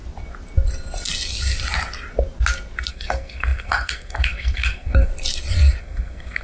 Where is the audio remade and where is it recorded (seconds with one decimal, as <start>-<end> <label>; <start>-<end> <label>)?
0.0-2.9 recorded; 2.9-5.1 remade; 5.1-5.8 recorded; 5.8-6.4 remade